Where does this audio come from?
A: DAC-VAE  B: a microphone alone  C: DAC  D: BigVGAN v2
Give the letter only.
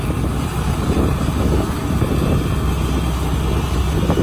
B